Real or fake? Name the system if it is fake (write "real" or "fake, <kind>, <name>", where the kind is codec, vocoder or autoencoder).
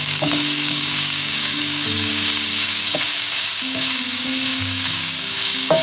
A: fake, codec, DAC